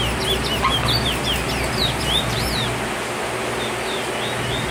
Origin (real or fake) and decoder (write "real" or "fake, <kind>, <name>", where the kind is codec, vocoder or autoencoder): real